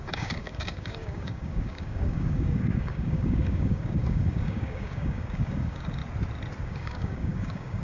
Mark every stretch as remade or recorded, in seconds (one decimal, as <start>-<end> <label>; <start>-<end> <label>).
0.0-6.0 remade; 6.0-6.6 recorded; 6.6-7.8 remade